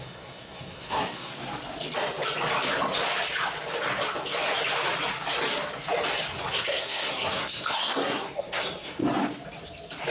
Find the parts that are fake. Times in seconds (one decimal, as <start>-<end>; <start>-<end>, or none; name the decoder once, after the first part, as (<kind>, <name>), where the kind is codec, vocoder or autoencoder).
0.0-1.3 (codec, SNAC); 6.5-9.0